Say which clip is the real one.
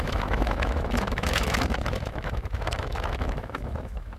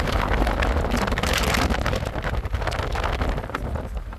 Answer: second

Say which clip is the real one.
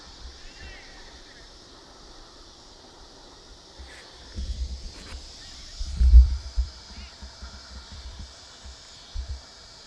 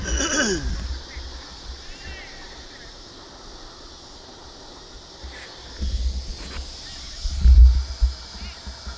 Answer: second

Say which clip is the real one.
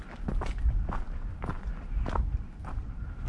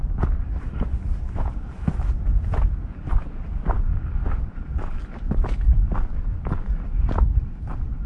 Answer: first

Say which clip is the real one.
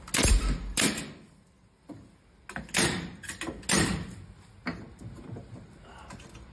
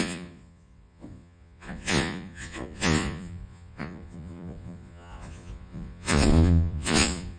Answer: first